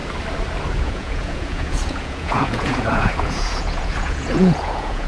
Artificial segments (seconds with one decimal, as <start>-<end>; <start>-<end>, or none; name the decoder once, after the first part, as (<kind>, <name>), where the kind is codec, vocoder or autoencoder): 0.7-5.1 (vocoder, Vocos)